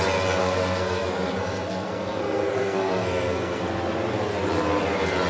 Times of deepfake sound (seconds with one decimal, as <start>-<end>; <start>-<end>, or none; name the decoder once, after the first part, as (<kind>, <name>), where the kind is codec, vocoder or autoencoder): 0.4-3.6 (codec, SNAC)